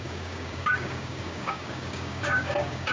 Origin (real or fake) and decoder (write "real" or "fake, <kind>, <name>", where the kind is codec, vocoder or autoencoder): fake, codec, DAC